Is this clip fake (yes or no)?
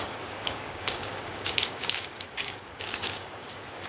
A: yes